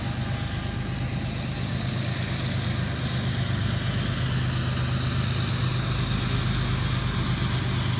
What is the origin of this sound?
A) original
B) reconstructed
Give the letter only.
A